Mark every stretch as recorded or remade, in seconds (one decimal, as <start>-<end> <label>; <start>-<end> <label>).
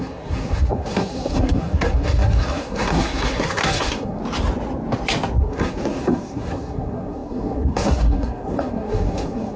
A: 0.0-4.2 remade; 4.2-5.4 recorded; 5.4-9.6 remade